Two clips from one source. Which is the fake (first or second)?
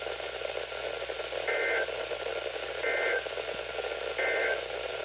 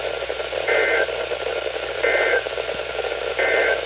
second